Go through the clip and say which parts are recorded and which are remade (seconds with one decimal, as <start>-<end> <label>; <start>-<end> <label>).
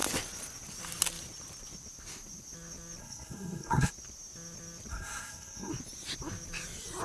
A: 0.0-3.0 recorded; 3.0-3.9 remade; 3.9-4.9 recorded; 4.9-5.7 remade; 5.7-7.0 recorded